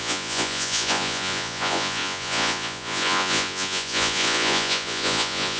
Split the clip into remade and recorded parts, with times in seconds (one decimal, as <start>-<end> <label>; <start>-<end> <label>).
0.0-5.6 remade

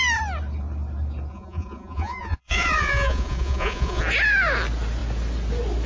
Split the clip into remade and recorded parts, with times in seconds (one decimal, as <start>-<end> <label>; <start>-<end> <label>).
0.0-1.3 recorded; 1.3-4.0 remade; 4.0-5.9 recorded

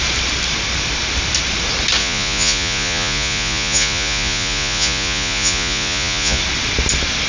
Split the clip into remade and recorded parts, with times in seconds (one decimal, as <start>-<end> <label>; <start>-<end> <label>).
0.0-2.0 recorded; 2.0-6.4 remade; 6.4-7.3 recorded